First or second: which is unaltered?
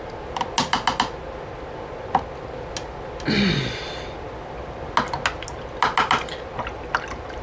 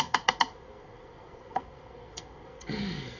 first